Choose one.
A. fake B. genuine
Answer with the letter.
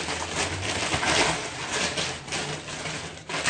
B